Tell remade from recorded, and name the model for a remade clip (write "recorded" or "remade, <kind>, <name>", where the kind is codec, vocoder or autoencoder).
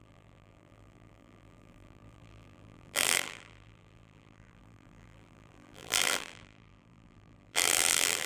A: remade, vocoder, BigVGAN v2